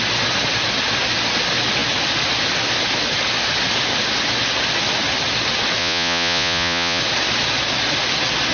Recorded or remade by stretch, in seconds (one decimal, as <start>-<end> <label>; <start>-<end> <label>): 0.0-5.8 recorded; 5.8-7.0 remade; 7.0-8.5 recorded